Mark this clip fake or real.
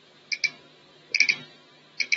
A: real